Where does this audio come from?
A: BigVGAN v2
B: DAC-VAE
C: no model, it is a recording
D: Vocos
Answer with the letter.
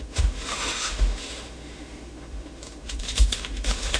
B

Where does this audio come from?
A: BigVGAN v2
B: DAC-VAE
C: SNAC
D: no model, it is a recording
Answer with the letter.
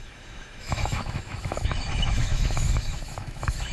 B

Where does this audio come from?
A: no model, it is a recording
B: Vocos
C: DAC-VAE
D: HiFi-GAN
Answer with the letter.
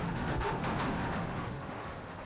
C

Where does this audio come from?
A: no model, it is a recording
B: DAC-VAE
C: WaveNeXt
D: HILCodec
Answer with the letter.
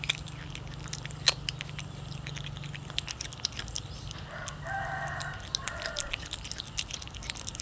A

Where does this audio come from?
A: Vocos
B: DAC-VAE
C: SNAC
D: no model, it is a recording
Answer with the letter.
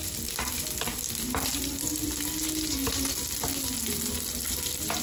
D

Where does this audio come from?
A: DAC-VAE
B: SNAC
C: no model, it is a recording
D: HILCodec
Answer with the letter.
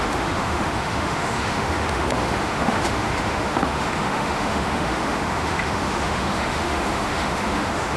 A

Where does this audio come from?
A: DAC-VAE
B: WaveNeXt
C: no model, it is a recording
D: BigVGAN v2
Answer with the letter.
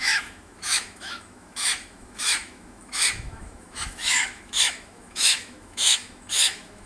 A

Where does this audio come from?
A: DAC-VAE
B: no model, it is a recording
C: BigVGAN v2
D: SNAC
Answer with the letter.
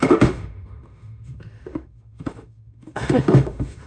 A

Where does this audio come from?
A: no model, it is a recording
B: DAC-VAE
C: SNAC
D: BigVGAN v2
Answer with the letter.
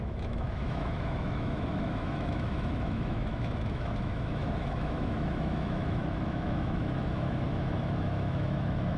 B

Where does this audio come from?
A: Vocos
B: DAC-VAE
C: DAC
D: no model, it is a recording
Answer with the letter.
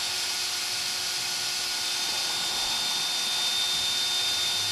D